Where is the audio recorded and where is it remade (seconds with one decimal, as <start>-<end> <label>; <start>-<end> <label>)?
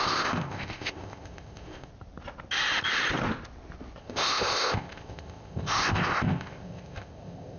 0.0-1.9 remade; 1.9-4.0 recorded; 4.0-7.6 remade